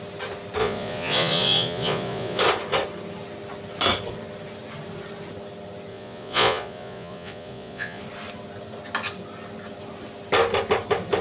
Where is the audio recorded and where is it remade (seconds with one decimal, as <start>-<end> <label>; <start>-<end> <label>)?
0.0-0.6 recorded; 0.6-2.4 remade; 2.4-5.9 recorded; 5.9-8.0 remade; 8.0-11.2 recorded